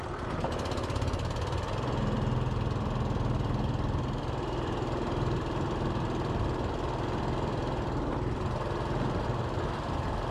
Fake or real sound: real